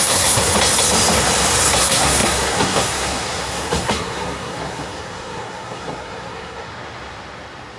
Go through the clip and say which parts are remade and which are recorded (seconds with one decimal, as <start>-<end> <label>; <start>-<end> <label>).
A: 0.0-0.5 remade; 0.5-1.8 recorded; 1.8-6.7 remade; 6.7-7.8 recorded